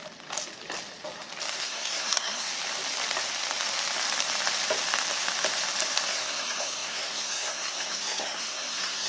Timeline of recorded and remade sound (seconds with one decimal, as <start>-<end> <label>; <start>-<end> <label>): 0.0-1.6 recorded; 1.6-2.5 remade; 2.5-6.1 recorded; 6.1-9.1 remade